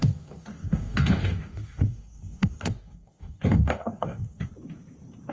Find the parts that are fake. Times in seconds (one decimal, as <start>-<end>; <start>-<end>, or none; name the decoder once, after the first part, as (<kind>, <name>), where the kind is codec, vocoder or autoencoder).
0.0-4.5 (codec, DAC)